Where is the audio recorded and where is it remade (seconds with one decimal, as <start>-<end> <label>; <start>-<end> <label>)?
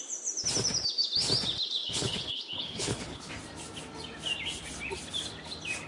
0.0-1.8 recorded; 1.8-3.3 remade; 3.3-5.9 recorded